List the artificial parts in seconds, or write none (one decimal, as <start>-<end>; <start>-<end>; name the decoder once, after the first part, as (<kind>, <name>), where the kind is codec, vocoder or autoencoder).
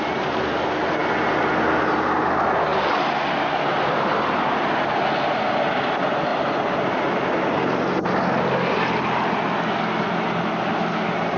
none